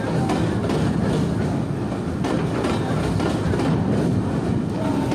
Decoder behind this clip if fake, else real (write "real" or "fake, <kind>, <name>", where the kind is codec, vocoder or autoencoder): real